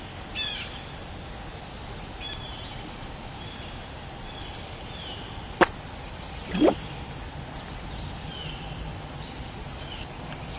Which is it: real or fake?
real